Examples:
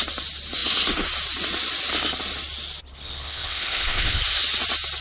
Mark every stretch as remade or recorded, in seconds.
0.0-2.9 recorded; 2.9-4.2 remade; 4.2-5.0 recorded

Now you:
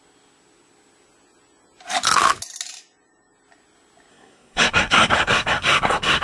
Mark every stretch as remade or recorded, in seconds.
0.0-4.1 recorded; 4.1-6.2 remade